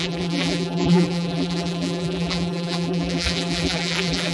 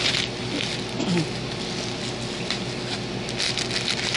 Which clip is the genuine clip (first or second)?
second